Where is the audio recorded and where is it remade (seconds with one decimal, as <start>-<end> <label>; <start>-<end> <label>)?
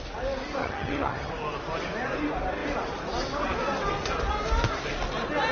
0.0-0.6 recorded; 0.6-1.3 remade; 1.3-5.5 recorded